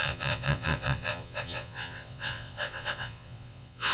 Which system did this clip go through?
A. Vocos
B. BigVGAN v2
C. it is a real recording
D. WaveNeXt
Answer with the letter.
D